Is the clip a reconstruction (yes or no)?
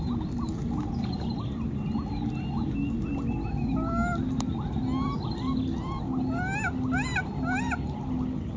no